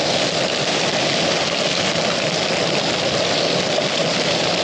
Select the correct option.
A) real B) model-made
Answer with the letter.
B